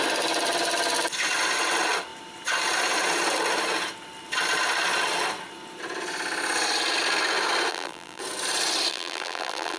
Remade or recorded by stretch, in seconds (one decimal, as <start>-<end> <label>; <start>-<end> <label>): 0.0-7.7 recorded; 7.7-8.2 remade; 8.2-8.9 recorded; 8.9-9.8 remade